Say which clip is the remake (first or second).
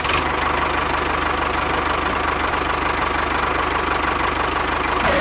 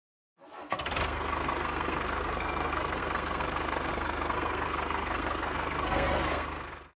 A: second